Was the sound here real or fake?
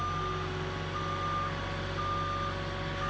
real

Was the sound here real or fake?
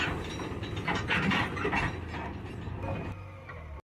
real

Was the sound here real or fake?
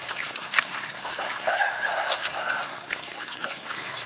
fake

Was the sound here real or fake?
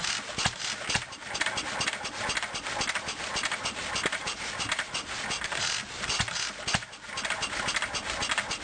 real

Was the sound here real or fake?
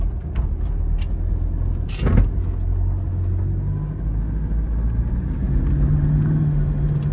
real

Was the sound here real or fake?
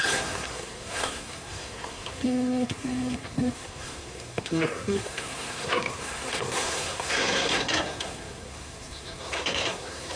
fake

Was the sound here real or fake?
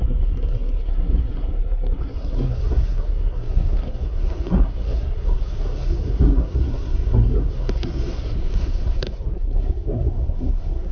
fake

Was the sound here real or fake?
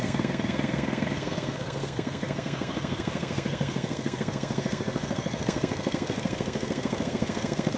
fake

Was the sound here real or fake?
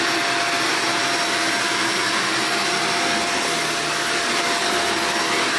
real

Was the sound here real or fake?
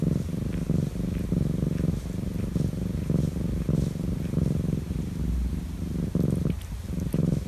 real